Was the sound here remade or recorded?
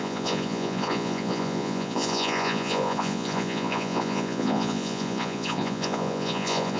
remade